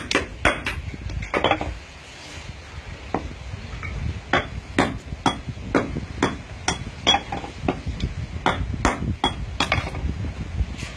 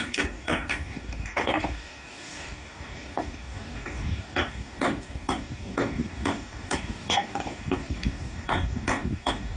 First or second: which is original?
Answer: first